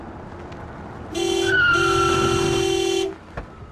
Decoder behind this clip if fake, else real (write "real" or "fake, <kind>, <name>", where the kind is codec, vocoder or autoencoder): real